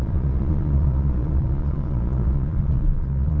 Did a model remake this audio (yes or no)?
yes